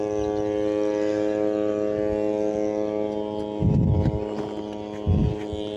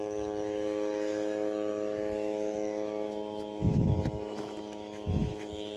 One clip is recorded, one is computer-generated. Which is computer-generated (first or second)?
second